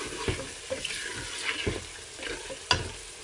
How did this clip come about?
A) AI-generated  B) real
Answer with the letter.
B